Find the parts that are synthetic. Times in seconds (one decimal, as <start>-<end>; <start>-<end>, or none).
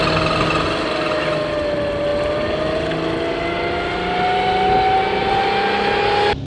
none